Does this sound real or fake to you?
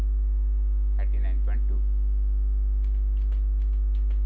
real